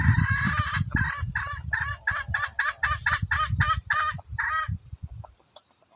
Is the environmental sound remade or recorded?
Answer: recorded